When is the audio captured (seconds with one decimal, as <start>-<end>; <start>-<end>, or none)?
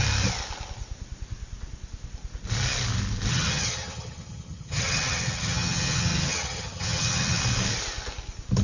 0.0-3.3; 7.4-8.6